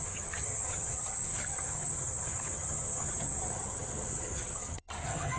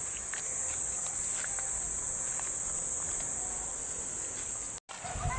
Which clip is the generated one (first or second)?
first